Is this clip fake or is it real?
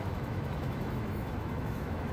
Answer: fake